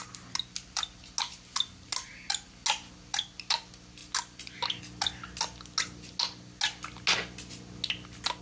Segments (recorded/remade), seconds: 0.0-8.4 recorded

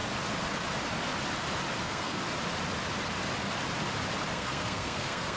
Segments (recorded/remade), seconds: 0.0-1.8 recorded; 1.8-2.2 remade; 2.2-4.3 recorded; 4.3-5.4 remade

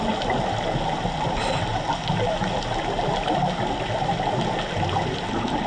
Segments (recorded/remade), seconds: 0.0-5.7 recorded

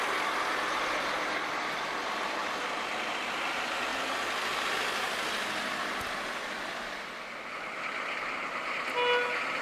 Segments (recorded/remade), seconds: 0.0-9.6 recorded

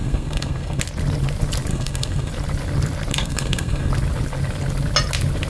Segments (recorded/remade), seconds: 0.0-0.8 remade; 0.8-1.7 recorded; 1.7-2.3 remade; 2.3-3.1 recorded; 3.1-3.9 remade; 3.9-5.5 recorded

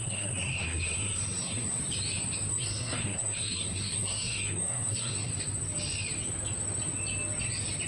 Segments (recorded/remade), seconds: 0.0-1.8 remade; 1.8-2.5 recorded; 2.5-5.3 remade; 5.3-7.9 recorded

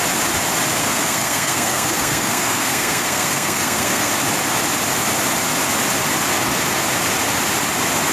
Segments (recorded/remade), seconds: 0.0-0.8 recorded; 0.8-4.1 remade; 4.1-8.1 recorded